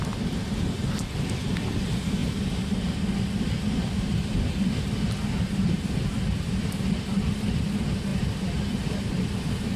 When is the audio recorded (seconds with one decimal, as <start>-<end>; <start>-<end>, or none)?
2.2-5.5; 8.1-9.1